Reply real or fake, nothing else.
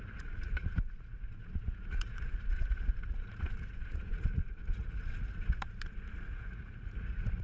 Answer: fake